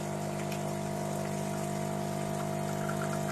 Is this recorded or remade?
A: recorded